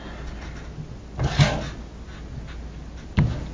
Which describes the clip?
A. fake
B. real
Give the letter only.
B